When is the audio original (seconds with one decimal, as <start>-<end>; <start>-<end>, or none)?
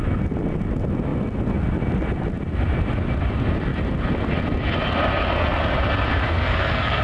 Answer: 0.0-6.2